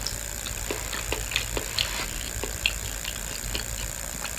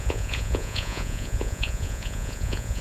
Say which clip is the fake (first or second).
second